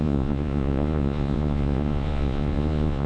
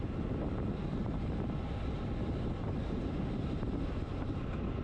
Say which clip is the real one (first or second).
second